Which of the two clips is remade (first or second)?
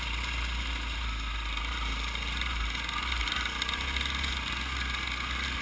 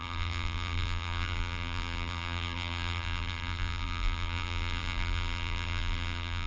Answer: second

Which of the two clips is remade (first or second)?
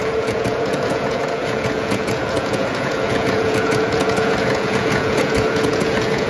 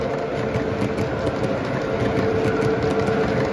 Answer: first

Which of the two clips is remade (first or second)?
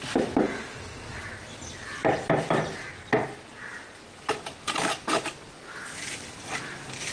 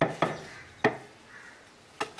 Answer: first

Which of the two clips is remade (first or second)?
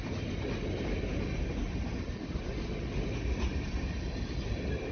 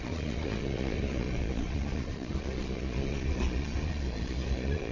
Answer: second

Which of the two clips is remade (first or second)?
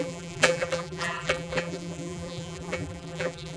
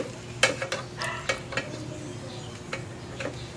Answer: first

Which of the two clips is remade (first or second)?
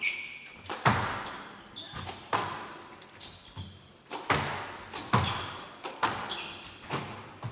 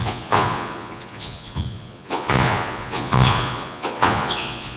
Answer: second